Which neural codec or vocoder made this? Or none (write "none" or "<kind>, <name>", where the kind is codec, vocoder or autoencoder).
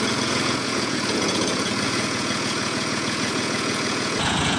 vocoder, Vocos